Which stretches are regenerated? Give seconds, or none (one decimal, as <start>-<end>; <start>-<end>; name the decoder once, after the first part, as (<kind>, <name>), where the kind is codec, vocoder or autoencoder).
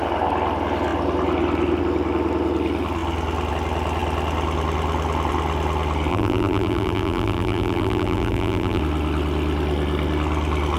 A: 6.1-8.8 (vocoder, BigVGAN v2)